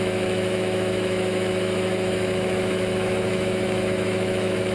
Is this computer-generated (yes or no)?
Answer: yes